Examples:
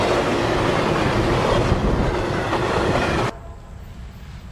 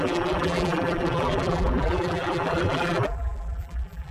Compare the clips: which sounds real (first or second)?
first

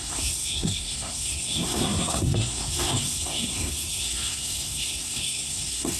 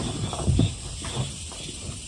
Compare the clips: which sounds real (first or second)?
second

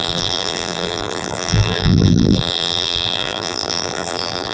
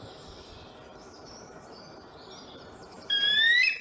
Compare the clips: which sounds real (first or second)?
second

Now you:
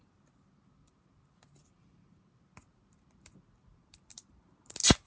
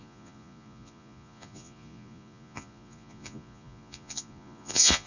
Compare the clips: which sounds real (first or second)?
first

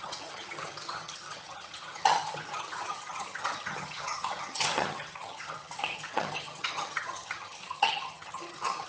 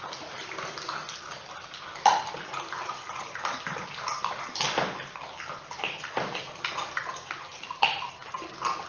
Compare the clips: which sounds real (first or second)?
second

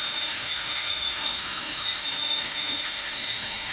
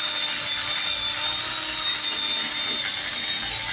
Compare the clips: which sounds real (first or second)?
second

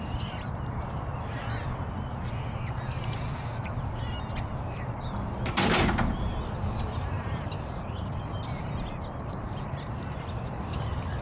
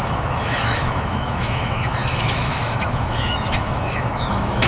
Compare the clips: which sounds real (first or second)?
first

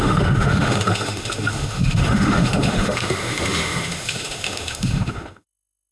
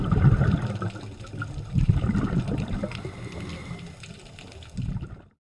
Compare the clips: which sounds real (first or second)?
second